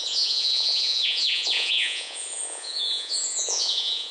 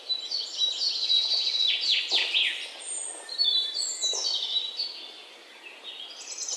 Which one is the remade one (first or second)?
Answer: first